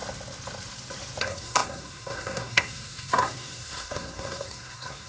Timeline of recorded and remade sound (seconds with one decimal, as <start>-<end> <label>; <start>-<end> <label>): 0.0-1.2 recorded; 1.2-5.1 remade